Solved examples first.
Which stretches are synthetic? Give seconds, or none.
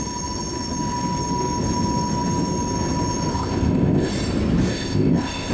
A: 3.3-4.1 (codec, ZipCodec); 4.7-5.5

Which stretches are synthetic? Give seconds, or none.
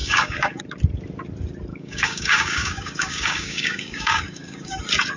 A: 0.0-0.6 (codec, DAC); 1.7-4.8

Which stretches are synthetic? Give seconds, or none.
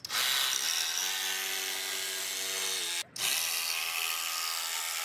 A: none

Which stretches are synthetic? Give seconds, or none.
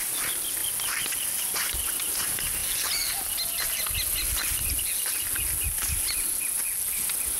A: none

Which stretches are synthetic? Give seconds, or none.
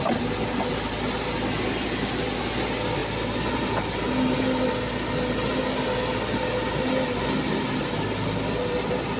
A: none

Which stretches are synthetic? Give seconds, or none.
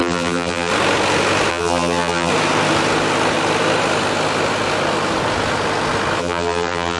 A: 0.0-0.7 (vocoder, BigVGAN v2); 1.5-2.3; 6.2-7.0